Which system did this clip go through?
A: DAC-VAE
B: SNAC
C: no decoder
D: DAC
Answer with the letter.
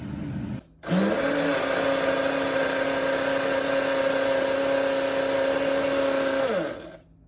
C